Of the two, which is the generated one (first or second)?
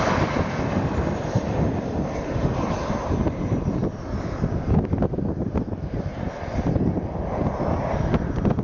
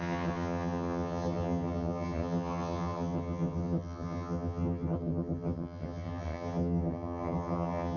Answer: second